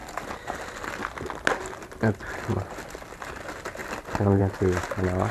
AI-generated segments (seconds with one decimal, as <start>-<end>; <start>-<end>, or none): none